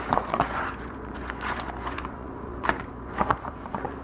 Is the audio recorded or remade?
remade